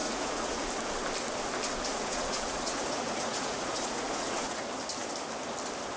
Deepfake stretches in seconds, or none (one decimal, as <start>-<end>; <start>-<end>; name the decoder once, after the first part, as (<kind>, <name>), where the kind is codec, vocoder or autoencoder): 0.0-0.7 (vocoder, Vocos); 1.9-4.6